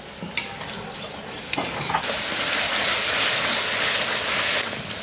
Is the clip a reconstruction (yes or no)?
no